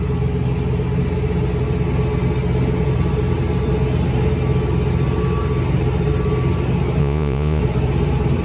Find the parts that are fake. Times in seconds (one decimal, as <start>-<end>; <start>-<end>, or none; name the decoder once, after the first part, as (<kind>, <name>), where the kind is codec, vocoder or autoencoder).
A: 7.0-7.6 (vocoder, Vocos)